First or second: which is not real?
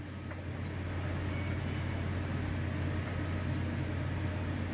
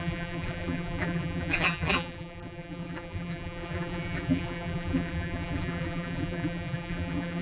second